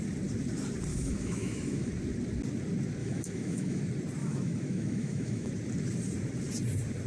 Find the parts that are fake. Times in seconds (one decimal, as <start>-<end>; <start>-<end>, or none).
0.9-1.9; 3.0-3.8; 4.2-5.5